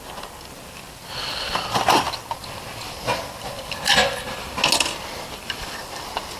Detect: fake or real real